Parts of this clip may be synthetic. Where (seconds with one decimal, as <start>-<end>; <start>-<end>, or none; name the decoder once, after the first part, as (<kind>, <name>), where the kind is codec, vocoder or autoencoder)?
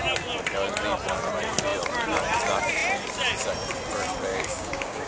4.3-5.1 (codec, DAC)